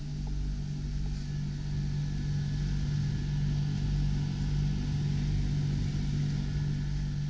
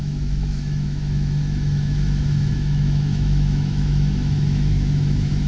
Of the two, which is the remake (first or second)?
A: second